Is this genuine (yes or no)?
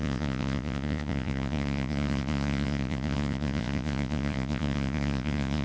no